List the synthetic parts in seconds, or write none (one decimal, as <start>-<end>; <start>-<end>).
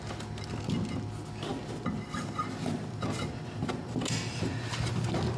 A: none